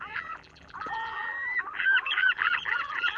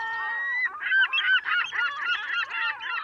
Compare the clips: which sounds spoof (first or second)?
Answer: first